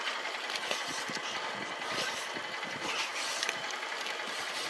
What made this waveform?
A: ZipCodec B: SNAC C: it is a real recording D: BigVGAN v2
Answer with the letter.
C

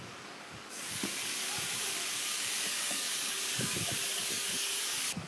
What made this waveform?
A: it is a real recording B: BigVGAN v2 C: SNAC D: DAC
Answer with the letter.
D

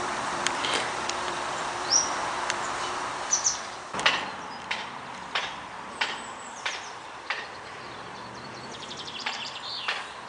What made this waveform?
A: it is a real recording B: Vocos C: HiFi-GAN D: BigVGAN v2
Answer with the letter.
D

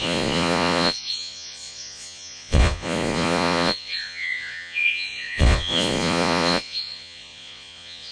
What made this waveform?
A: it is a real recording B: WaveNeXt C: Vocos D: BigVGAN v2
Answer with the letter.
C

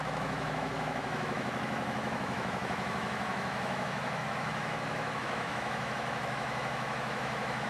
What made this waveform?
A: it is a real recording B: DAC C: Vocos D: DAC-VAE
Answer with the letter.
D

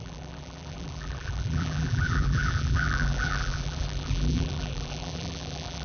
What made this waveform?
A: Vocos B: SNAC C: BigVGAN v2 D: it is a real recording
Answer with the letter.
C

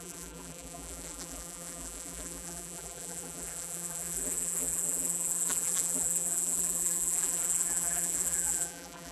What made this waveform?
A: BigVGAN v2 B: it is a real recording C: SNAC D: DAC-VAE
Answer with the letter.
A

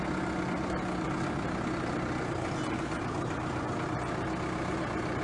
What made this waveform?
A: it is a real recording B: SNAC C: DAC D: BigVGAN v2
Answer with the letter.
A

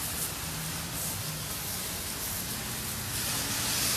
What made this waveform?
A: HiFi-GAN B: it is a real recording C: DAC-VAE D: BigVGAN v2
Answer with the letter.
B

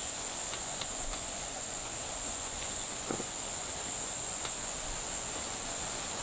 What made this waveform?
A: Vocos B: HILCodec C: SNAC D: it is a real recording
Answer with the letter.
A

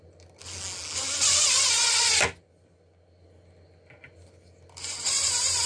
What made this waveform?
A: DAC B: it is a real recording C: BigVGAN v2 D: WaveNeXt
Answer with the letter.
B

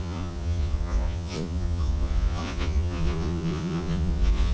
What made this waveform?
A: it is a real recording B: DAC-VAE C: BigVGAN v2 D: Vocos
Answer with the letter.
D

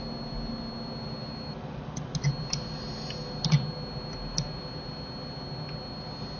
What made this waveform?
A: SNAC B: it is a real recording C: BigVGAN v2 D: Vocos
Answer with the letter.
B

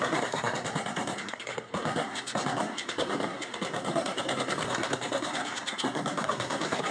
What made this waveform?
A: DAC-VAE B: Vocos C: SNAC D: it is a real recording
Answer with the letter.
C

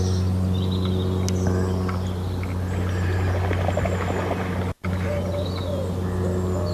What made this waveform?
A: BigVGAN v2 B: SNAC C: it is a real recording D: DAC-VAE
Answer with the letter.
C